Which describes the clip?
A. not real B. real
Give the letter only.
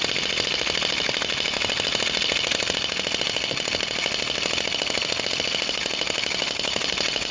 B